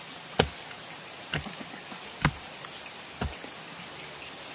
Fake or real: real